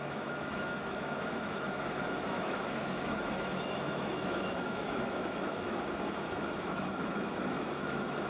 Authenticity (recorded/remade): remade